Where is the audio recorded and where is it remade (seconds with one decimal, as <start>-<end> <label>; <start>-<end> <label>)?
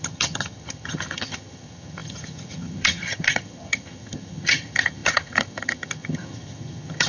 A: 0.0-7.1 remade